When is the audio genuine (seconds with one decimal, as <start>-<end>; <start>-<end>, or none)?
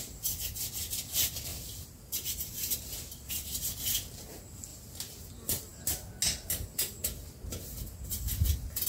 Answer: 0.0-1.5; 2.5-8.9